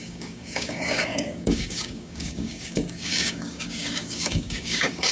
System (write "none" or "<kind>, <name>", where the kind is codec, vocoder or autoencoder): codec, DAC